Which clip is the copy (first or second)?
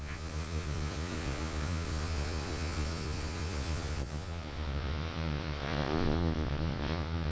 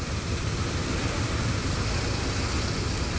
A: first